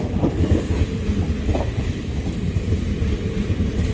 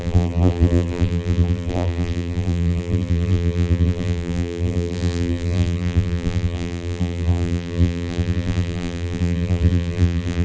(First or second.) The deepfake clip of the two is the second